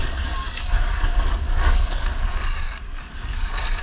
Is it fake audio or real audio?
fake